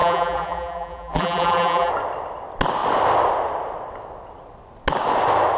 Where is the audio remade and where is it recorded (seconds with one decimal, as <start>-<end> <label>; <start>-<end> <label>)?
0.0-1.9 remade; 1.9-5.6 recorded